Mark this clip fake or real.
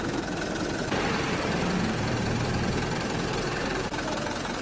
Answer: fake